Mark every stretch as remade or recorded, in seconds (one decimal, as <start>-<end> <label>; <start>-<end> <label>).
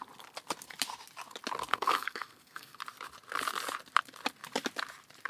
0.0-1.7 recorded; 1.7-2.8 remade; 2.8-5.3 recorded